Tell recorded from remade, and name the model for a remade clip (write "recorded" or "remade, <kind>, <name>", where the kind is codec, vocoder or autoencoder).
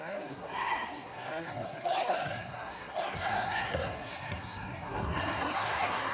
remade, codec, SNAC